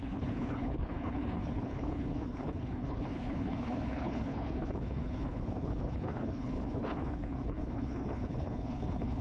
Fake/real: fake